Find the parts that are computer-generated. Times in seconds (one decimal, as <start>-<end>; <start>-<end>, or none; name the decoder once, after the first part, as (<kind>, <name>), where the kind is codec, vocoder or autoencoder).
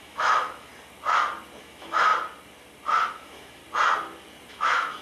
0.0-0.7 (autoencoder, DAC-VAE); 1.6-2.1; 3.1-3.6; 4.5-5.0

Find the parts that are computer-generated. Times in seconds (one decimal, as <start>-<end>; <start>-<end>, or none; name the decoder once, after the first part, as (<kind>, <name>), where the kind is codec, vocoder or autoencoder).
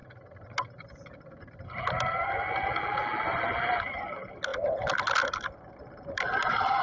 none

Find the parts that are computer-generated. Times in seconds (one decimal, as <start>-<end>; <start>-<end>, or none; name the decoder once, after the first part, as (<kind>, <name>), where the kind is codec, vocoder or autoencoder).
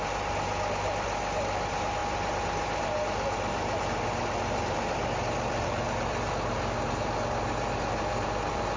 none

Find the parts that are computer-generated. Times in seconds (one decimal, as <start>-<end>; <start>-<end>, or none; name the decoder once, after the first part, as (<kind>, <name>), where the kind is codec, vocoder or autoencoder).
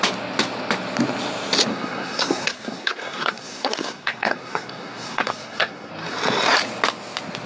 1.7-5.9 (codec, SNAC)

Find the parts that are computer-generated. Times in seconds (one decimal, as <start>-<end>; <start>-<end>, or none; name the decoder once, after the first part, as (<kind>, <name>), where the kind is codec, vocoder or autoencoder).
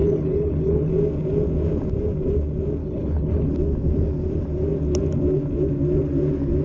0.0-0.9 (codec, HILCodec); 2.8-3.5